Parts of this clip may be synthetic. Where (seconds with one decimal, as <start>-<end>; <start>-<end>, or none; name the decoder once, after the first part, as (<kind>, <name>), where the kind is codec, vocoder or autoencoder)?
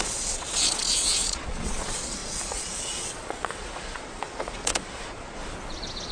0.0-5.4 (vocoder, Vocos)